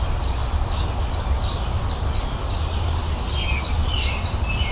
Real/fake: real